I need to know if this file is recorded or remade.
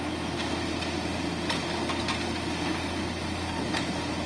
recorded